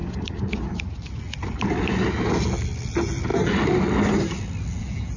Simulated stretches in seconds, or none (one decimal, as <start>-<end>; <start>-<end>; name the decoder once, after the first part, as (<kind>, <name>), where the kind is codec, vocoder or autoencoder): none